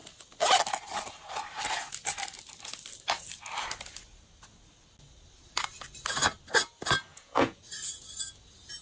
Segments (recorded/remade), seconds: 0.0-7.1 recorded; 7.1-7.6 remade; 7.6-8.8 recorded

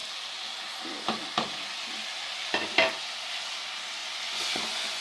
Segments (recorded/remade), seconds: 0.0-4.0 recorded; 4.0-5.0 remade

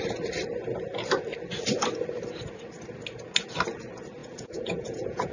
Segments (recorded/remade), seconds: 0.0-4.2 recorded; 4.2-5.3 remade

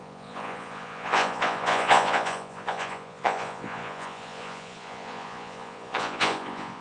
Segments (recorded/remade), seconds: 0.0-6.8 remade

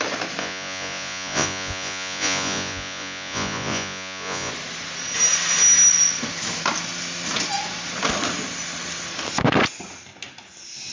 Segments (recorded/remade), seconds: 0.0-0.4 recorded; 0.4-4.5 remade; 4.5-10.9 recorded

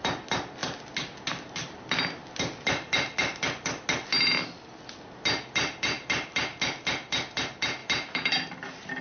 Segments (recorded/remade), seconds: 0.0-9.0 recorded

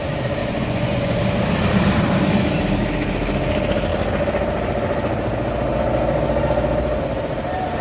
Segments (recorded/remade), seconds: 0.0-0.4 recorded; 0.4-1.2 remade; 1.2-7.8 recorded

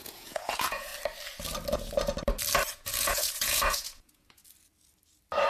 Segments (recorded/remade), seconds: 0.0-0.9 remade; 0.9-2.7 recorded; 2.7-4.4 remade; 4.4-5.5 recorded